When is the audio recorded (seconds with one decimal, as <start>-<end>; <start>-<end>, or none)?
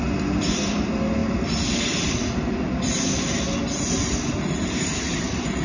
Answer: 0.0-5.6